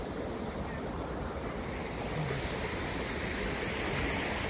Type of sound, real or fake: real